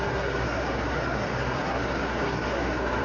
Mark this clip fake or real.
fake